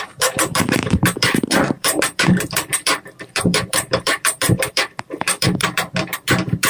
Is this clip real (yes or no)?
no